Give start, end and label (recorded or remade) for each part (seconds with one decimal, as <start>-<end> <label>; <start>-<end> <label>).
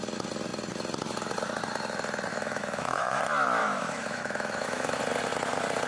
0.0-2.3 recorded; 2.3-3.2 remade; 3.2-3.6 recorded; 3.6-5.0 remade; 5.0-5.9 recorded